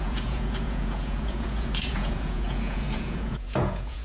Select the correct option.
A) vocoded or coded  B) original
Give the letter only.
A